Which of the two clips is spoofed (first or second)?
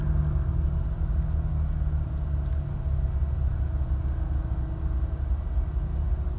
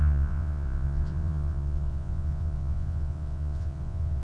second